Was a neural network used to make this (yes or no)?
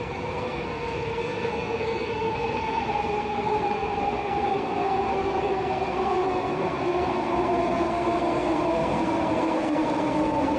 yes